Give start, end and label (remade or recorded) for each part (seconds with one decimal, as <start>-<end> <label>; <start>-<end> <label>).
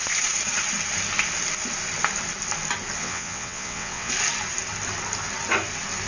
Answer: 0.0-3.0 recorded; 3.0-4.1 remade; 4.1-6.1 recorded